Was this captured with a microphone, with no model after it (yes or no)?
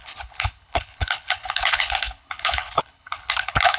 no